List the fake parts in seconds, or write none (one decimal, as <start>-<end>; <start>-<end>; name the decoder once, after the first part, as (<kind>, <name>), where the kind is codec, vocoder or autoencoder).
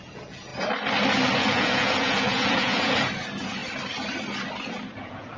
0.0-0.5 (vocoder, Vocos); 1.4-3.6; 4.7-5.4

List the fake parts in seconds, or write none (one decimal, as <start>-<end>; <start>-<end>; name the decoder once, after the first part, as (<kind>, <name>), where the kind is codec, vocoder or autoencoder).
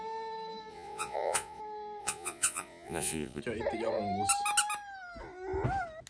0.7-1.6 (vocoder, Vocos); 2.0-3.4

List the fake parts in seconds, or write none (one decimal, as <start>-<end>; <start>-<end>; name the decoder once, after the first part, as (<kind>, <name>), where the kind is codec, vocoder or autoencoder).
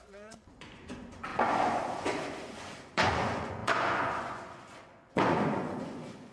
0.0-6.3 (vocoder, Vocos)